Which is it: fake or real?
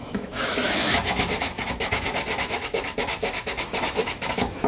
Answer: fake